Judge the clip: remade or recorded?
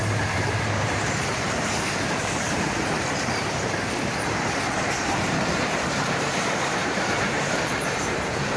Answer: remade